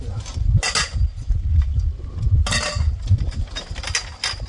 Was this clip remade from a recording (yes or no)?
no